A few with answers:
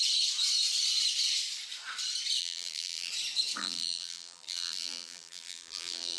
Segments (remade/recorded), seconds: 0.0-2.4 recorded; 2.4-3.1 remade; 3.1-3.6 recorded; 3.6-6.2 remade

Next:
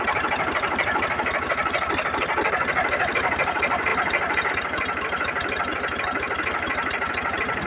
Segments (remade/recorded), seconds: 0.0-3.9 remade; 3.9-4.5 recorded; 4.5-7.7 remade

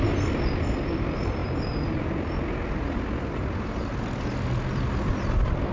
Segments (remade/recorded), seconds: 0.0-5.7 recorded

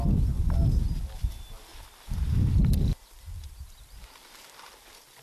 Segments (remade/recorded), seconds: 0.0-1.7 recorded; 1.7-4.8 remade; 4.8-5.2 recorded

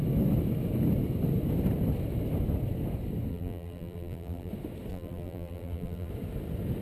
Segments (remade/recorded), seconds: 0.0-3.3 recorded; 3.3-4.5 remade; 4.5-4.9 recorded; 4.9-6.1 remade; 6.1-6.8 recorded

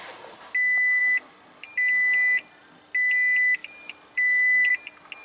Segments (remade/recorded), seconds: 0.0-3.6 recorded; 3.6-4.7 remade; 4.7-5.2 recorded

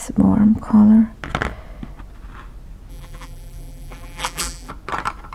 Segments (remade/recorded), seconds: 0.0-2.9 recorded; 2.9-4.7 remade; 4.7-5.3 recorded

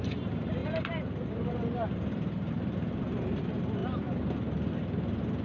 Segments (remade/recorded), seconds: 0.0-3.8 remade; 3.8-4.7 recorded; 4.7-5.4 remade